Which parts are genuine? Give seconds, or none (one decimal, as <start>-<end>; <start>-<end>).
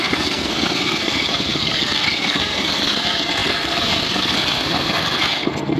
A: none